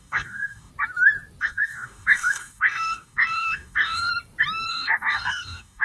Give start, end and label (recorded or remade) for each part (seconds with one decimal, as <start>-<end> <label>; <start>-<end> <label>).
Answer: 0.0-0.7 remade; 0.7-1.4 recorded; 1.4-4.1 remade; 4.1-4.7 recorded; 4.7-5.8 remade